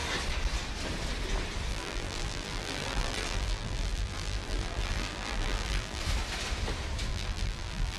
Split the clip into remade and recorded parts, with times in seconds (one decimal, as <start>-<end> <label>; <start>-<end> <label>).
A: 0.0-1.7 recorded; 1.7-6.0 remade; 6.0-7.1 recorded; 7.1-8.0 remade